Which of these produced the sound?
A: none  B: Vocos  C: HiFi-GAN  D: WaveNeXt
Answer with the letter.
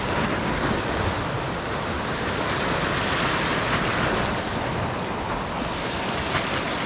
A